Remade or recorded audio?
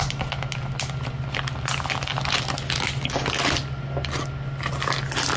recorded